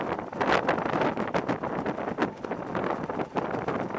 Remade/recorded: recorded